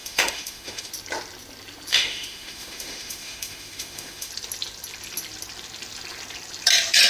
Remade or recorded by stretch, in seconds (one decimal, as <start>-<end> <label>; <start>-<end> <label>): 0.0-0.9 remade; 0.9-1.9 recorded; 1.9-4.3 remade; 4.3-7.1 recorded